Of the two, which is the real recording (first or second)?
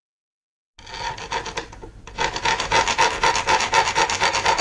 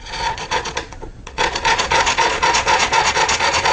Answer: first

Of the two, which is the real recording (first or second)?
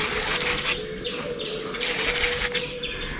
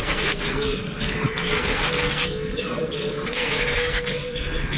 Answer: first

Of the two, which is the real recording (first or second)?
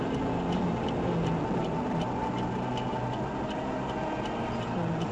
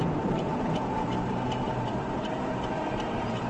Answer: first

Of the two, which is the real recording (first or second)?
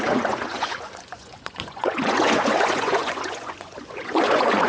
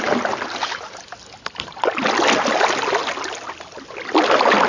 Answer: second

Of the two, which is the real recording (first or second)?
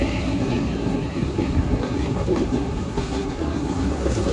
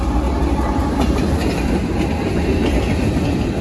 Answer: second